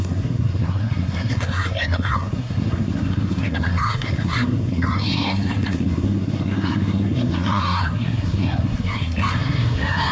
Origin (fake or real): fake